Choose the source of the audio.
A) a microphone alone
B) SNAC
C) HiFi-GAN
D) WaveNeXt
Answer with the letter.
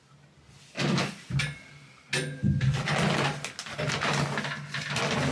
A